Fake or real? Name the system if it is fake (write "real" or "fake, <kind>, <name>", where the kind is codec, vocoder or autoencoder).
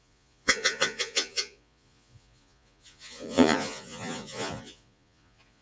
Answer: fake, vocoder, Vocos